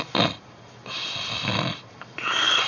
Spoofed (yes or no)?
no